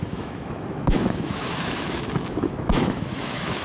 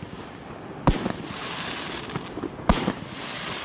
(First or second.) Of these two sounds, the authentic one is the second